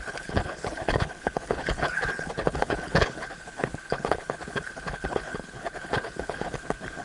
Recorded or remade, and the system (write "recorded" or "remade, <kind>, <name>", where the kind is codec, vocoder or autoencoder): remade, codec, HILCodec